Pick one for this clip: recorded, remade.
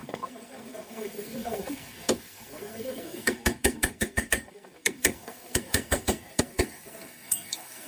remade